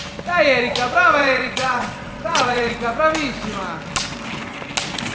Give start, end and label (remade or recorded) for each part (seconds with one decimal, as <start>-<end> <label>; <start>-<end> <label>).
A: 0.0-1.2 recorded; 1.2-2.7 remade; 2.7-5.1 recorded